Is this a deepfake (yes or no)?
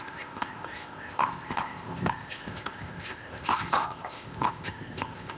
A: yes